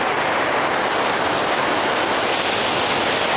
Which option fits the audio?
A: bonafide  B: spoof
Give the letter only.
A